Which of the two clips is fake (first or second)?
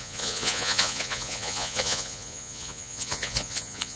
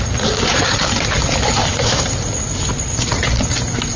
first